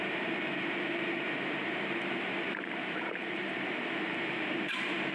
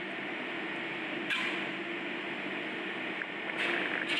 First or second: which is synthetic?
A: first